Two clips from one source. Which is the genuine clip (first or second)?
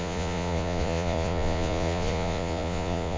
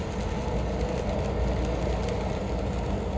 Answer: second